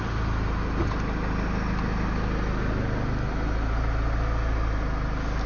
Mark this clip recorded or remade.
recorded